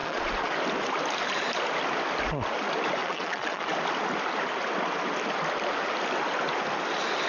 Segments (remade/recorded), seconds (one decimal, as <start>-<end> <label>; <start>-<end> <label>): 0.0-0.5 remade; 0.5-3.0 recorded; 3.0-3.7 remade; 3.7-7.3 recorded